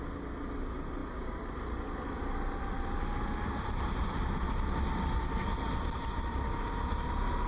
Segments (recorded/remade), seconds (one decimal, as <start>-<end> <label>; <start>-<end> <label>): 0.0-7.5 recorded